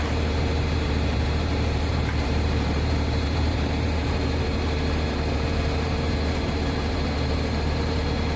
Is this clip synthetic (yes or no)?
yes